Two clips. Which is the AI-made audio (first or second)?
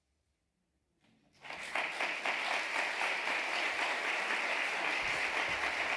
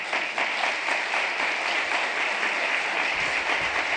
second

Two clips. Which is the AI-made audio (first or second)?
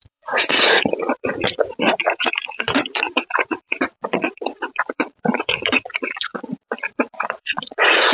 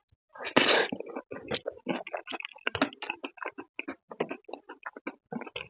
first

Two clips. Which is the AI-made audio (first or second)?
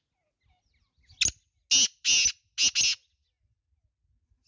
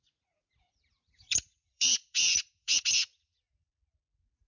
second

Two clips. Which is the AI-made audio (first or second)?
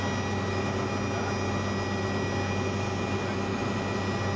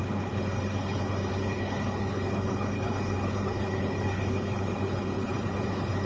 second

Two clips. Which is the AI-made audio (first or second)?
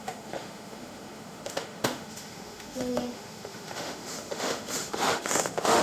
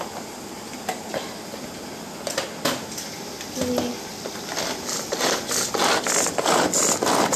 first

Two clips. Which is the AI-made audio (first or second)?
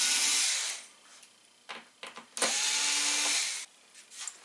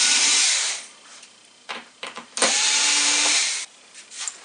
second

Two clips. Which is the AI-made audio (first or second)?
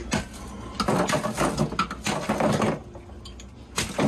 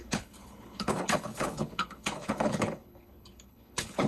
second